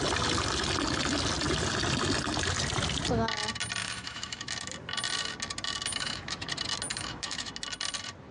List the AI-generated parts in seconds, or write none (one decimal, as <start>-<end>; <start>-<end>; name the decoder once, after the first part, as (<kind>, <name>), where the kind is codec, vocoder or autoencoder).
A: 3.8-4.5 (autoencoder, DAC-VAE); 5.9-6.5; 6.9-7.5